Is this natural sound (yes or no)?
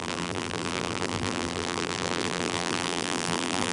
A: no